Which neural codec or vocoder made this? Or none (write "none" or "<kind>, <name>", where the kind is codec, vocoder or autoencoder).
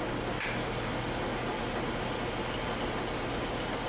none